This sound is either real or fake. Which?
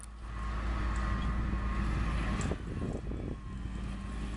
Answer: real